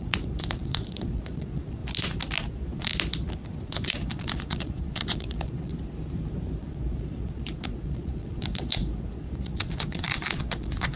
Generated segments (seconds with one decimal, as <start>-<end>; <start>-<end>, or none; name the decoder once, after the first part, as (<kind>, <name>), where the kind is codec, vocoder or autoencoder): 0.0-1.8 (vocoder, Vocos); 2.5-2.9; 3.7-5.7; 6.6-11.0